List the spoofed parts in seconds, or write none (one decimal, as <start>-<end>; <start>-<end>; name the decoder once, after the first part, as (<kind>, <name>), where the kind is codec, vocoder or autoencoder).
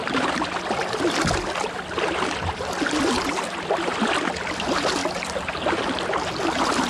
none